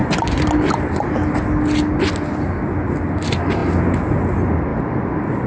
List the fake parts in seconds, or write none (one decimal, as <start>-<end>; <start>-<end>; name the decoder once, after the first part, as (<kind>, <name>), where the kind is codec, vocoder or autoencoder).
4.7-5.5 (vocoder, BigVGAN v2)